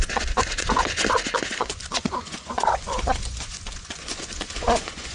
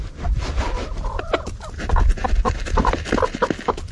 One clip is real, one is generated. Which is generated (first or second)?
first